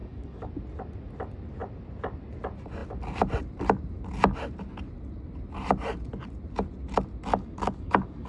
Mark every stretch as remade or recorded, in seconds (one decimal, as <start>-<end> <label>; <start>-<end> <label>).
0.0-0.5 remade; 0.5-7.3 recorded; 7.3-8.3 remade